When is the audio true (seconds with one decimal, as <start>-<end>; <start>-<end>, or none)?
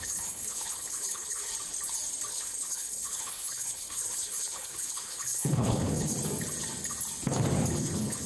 1.5-2.3; 6.1-7.8